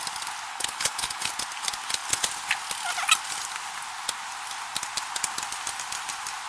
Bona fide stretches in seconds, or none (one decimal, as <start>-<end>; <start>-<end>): 0.0-0.5; 1.3-6.5